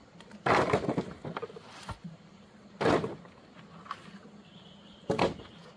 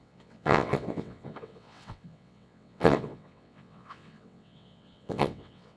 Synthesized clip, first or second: second